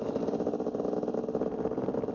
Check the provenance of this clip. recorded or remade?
recorded